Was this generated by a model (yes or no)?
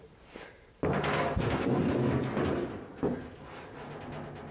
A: no